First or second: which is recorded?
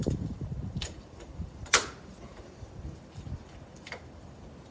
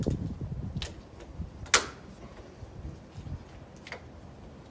second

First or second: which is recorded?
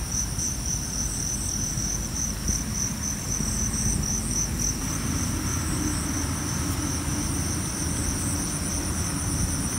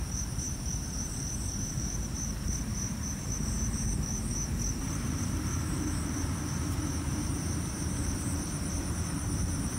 first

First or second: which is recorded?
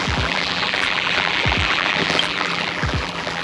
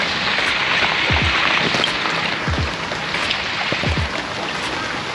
second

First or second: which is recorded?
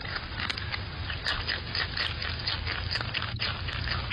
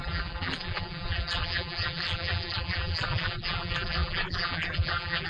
first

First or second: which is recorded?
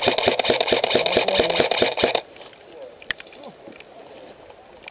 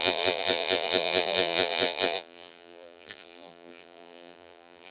first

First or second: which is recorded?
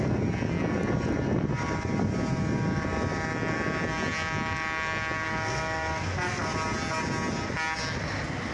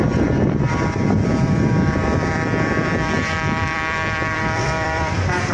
first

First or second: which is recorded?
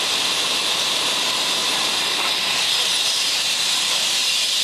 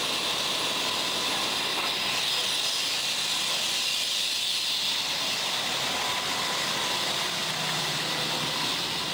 second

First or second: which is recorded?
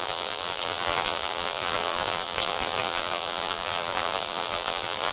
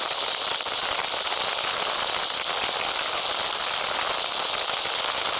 second